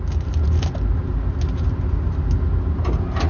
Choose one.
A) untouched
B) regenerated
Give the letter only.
A